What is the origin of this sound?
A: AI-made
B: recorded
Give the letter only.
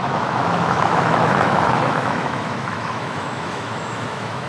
A